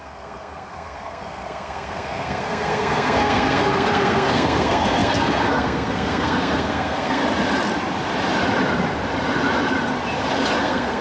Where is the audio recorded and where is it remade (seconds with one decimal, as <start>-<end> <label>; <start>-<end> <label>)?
0.0-7.2 remade; 7.2-10.6 recorded; 10.6-11.0 remade